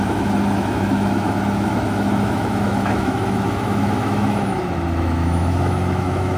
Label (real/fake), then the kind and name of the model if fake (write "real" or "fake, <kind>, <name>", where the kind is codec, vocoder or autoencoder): fake, autoencoder, DAC-VAE